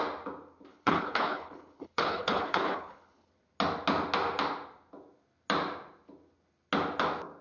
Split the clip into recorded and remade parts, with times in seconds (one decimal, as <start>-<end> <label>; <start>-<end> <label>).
0.0-0.7 recorded; 0.7-3.3 remade; 3.3-7.4 recorded